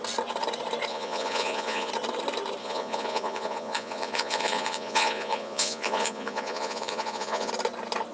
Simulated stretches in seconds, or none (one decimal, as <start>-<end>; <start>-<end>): 0.9-1.9; 2.6-7.5

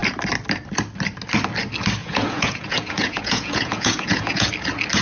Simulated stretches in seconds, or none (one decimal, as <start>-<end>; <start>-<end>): 2.0-4.5

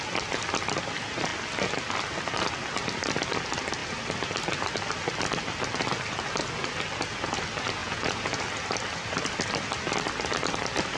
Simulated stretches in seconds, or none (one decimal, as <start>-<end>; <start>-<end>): 7.8-8.4

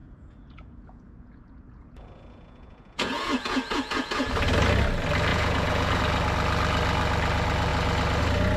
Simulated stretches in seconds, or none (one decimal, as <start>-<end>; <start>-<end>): 0.0-4.3; 5.3-6.0

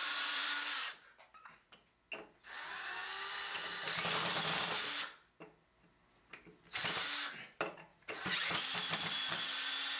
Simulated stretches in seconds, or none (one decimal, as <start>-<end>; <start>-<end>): 0.0-0.5; 7.9-8.6

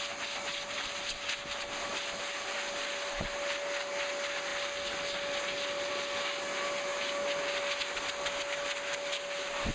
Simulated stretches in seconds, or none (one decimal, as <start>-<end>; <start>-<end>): none

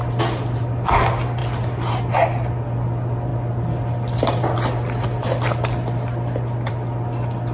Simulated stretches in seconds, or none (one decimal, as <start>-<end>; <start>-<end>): none